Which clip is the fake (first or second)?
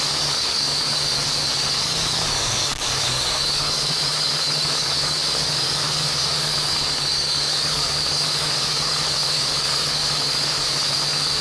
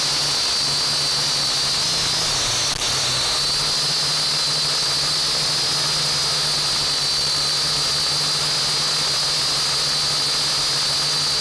first